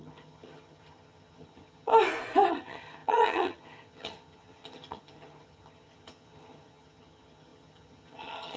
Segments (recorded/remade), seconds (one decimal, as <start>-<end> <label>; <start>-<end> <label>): 0.0-1.9 remade; 1.9-2.5 recorded; 2.5-8.6 remade